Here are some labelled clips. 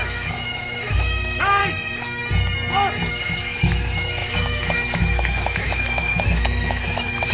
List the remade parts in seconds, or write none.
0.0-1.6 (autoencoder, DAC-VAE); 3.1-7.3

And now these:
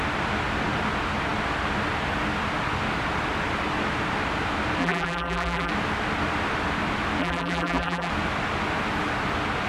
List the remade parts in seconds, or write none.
4.8-5.7 (vocoder, BigVGAN v2); 7.2-8.1

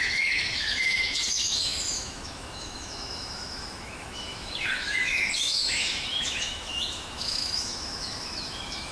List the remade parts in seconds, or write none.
0.0-8.9 (autoencoder, DAC-VAE)

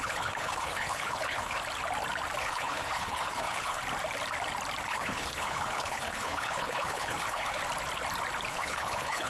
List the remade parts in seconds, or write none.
0.0-1.6 (codec, HILCodec); 2.4-3.8; 4.9-7.6; 8.5-9.3

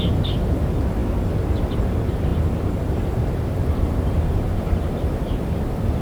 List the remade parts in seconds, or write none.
2.3-6.0 (vocoder, BigVGAN v2)

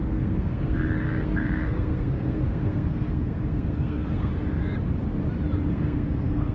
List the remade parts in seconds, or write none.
0.0-4.3 (codec, SNAC); 5.7-6.5

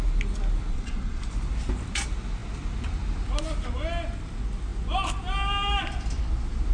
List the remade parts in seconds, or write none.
0.7-1.3 (vocoder, Vocos)